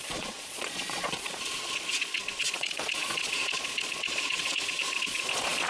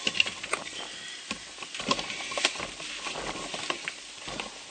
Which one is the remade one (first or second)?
first